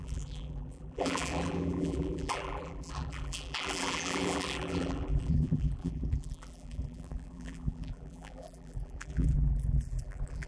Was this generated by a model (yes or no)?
yes